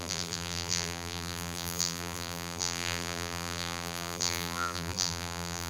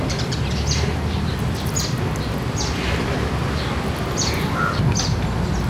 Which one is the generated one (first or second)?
first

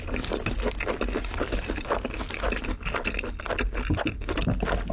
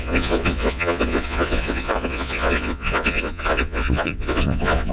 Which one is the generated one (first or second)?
second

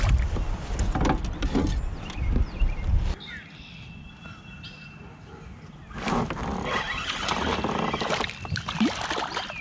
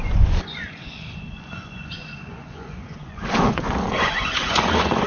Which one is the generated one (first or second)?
second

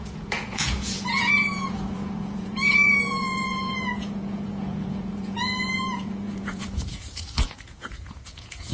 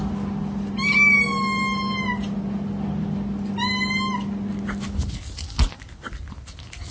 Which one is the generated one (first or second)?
first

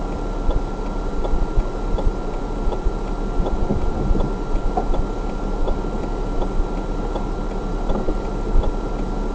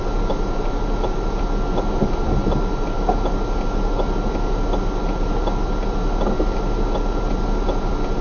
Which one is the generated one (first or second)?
first